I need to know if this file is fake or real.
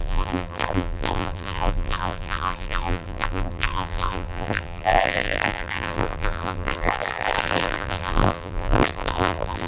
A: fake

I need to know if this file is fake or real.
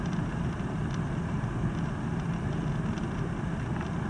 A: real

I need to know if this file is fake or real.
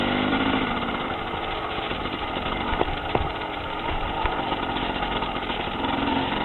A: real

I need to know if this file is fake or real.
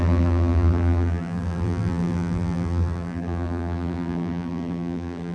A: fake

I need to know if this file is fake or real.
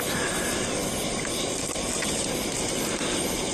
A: real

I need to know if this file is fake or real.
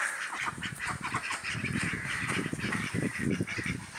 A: fake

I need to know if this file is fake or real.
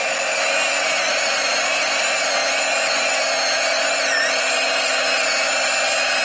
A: real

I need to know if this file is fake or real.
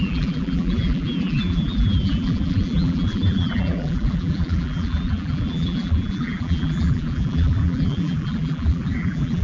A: fake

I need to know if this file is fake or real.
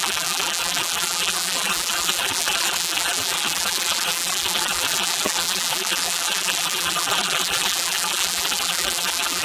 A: fake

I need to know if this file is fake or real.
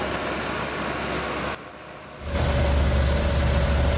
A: real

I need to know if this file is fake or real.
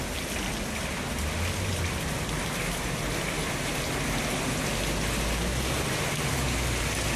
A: real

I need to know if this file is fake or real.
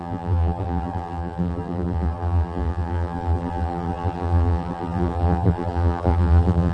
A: fake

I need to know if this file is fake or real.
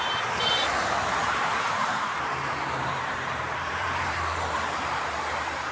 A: fake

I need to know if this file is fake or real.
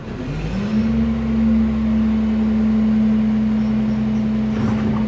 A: real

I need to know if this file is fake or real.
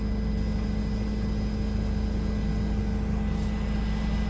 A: real